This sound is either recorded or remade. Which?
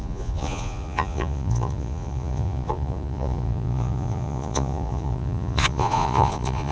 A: remade